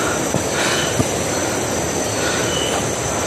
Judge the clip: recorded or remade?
recorded